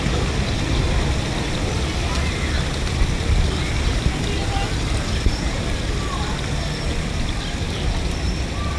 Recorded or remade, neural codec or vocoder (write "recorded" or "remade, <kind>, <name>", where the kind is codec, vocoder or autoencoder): recorded